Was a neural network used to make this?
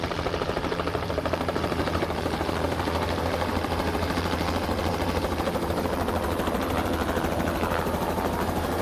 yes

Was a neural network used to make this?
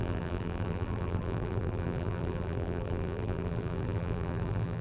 yes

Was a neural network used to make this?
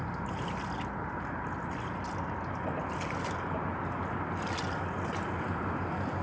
no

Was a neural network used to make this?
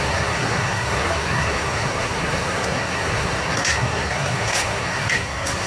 yes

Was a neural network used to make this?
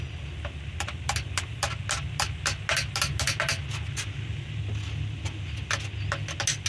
no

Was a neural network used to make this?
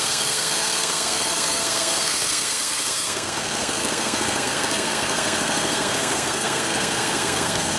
yes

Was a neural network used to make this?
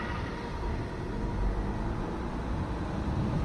no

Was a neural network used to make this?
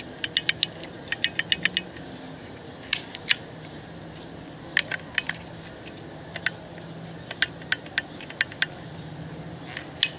no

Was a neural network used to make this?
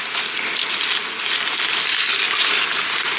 no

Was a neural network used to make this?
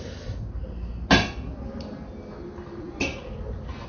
no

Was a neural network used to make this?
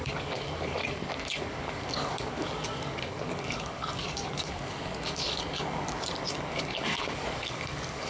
yes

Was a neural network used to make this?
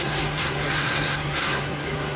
yes